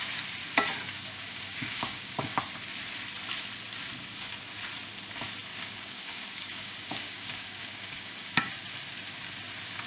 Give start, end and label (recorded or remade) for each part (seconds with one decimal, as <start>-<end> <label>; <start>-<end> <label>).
0.0-1.1 recorded; 1.1-2.4 remade; 2.4-5.5 recorded; 5.5-8.5 remade; 8.5-9.9 recorded